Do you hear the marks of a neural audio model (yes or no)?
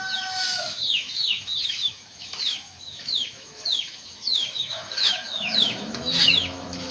yes